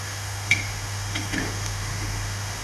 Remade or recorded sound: remade